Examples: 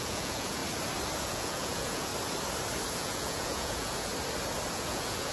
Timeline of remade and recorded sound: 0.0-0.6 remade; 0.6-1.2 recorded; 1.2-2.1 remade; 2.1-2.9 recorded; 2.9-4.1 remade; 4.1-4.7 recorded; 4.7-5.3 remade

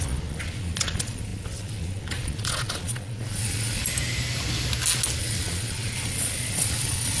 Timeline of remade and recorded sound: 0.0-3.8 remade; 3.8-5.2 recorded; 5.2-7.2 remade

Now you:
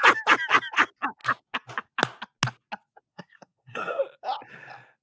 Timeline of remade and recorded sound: 0.0-3.1 recorded; 3.1-4.0 remade; 4.0-5.0 recorded

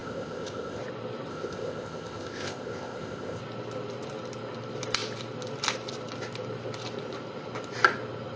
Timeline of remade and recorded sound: 0.0-0.8 remade; 0.8-1.3 recorded; 1.3-3.4 remade; 3.4-8.4 recorded

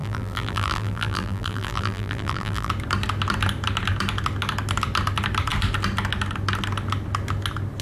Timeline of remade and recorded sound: 0.0-2.7 remade; 2.7-7.8 recorded

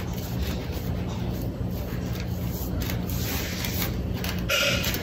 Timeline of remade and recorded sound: 0.0-5.0 recorded